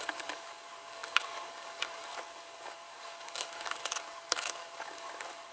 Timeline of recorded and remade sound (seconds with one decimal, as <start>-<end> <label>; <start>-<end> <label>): 0.0-5.5 remade